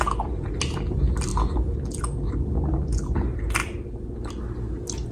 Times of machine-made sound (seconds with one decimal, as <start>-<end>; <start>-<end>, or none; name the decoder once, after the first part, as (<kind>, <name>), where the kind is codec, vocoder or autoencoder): none